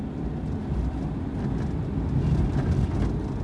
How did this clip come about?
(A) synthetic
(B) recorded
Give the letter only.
B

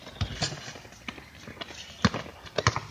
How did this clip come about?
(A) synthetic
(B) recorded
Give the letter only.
B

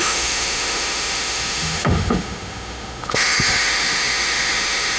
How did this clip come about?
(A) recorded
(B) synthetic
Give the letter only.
B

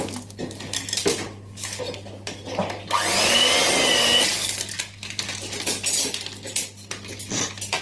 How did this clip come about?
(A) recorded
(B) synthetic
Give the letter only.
A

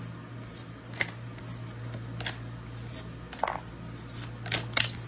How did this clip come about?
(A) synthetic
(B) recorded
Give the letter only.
B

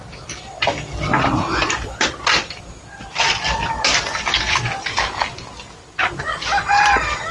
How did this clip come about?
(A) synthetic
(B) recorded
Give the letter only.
B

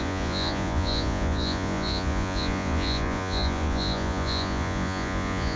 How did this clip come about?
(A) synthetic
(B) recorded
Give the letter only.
A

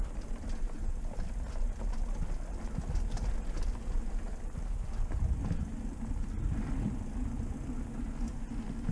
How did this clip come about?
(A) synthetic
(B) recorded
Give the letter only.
B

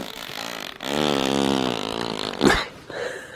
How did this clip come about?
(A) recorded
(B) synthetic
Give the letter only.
A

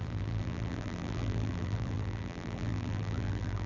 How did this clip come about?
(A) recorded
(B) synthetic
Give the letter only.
B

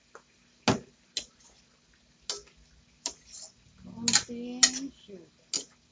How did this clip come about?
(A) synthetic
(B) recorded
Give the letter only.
B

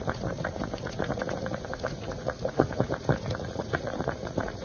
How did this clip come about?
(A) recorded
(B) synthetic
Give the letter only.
B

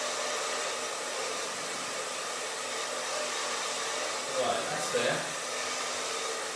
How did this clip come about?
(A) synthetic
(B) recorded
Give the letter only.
B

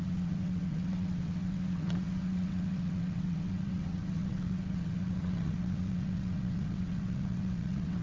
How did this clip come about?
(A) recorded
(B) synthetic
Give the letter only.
B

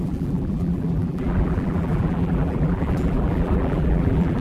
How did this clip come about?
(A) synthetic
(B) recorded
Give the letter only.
A